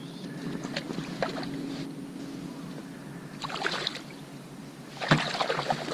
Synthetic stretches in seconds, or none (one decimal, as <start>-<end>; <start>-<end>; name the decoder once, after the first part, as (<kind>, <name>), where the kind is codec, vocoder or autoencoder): none